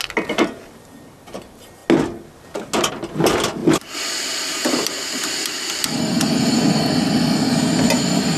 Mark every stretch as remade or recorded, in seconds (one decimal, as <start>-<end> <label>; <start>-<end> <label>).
0.0-3.6 recorded; 3.6-5.8 remade; 5.8-8.4 recorded